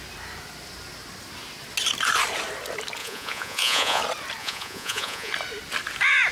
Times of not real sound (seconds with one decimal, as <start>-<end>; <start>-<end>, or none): 3.0-4.0; 4.4-5.3

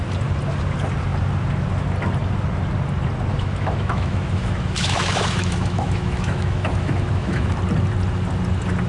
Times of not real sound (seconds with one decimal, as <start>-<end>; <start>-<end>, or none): 3.3-7.5

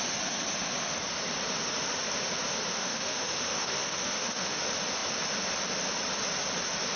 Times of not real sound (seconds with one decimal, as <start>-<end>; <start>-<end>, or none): 2.8-4.6

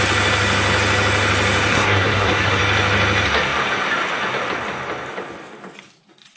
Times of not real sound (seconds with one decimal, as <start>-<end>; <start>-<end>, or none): 1.7-2.6

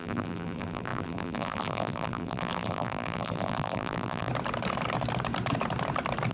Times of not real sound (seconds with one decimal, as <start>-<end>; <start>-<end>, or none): 0.0-4.3

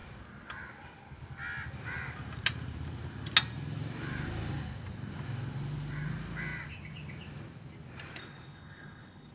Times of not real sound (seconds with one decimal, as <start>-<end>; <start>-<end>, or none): 8.2-9.3

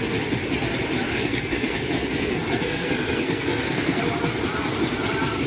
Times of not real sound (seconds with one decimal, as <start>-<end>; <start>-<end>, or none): 1.1-4.0